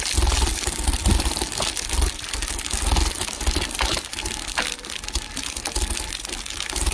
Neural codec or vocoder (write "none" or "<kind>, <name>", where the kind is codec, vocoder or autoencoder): none